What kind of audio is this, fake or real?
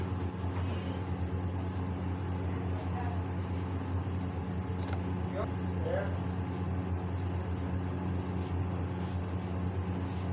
real